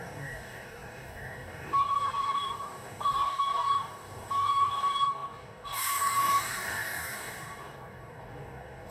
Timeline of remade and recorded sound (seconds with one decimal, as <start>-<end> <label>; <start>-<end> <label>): 0.0-8.9 remade